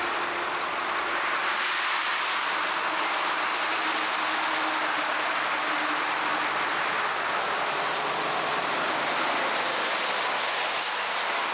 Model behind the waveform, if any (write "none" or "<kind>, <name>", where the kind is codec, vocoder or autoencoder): none